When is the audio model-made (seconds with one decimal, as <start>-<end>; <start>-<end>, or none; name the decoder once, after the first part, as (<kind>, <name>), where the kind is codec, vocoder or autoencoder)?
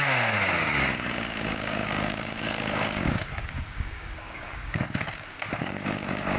0.0-6.4 (codec, DAC)